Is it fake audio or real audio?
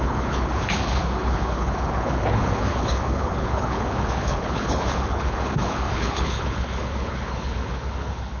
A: fake